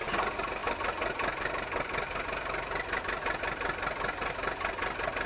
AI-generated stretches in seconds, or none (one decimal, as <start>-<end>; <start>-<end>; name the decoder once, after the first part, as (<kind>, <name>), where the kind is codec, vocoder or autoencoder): none